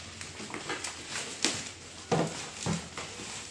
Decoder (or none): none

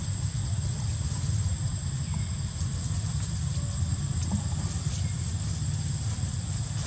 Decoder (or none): none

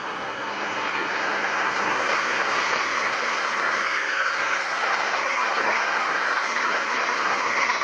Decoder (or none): codec, SNAC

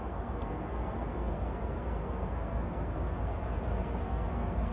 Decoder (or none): codec, SNAC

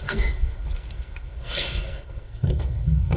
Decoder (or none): codec, SNAC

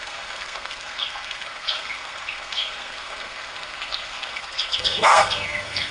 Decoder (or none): codec, SNAC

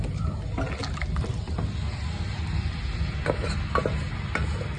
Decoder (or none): none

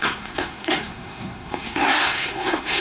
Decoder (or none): codec, SNAC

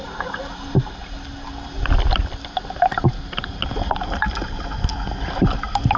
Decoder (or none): none